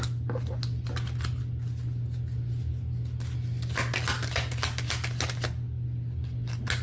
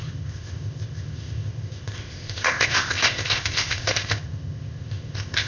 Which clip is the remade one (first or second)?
second